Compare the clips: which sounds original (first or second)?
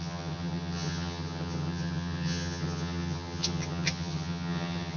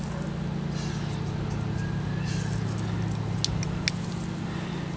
second